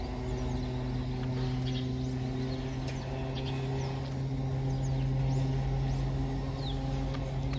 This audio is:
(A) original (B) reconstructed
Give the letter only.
A